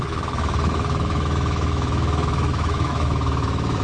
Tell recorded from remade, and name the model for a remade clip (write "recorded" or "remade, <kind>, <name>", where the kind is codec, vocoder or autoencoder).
remade, autoencoder, DAC-VAE